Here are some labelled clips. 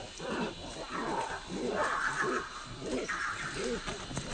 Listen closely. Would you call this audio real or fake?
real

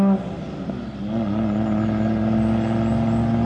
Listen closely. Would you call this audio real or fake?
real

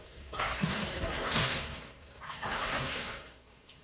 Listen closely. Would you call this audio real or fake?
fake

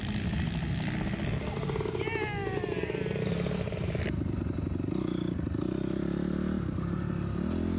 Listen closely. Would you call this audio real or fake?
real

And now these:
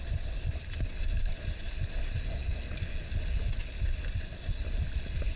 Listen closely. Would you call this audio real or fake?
real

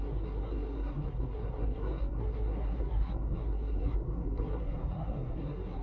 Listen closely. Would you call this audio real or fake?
fake